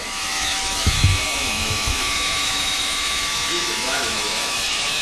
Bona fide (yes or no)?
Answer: no